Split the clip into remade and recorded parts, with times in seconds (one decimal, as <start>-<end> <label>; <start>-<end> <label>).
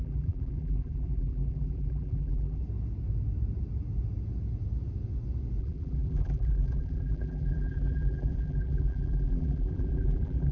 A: 0.0-2.6 remade; 2.6-5.6 recorded; 5.6-10.5 remade